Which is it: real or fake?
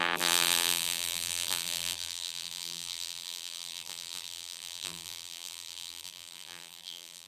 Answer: fake